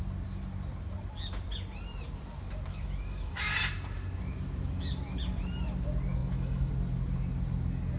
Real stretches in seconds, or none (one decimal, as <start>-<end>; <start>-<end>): 0.0-2.7; 3.5-6.2; 6.7-8.0